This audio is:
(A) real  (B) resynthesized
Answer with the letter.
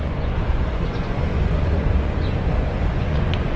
B